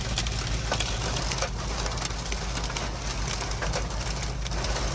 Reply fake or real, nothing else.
real